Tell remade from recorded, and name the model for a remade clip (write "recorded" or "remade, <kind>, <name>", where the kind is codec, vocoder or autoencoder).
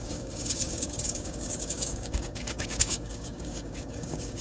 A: remade, codec, DAC